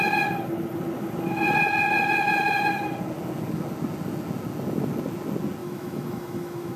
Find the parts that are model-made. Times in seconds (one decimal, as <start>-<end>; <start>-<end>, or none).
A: 5.6-6.8